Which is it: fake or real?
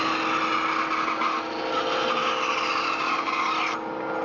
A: real